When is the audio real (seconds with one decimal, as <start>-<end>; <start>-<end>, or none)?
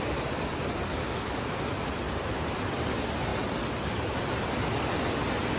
0.0-0.9; 1.9-5.6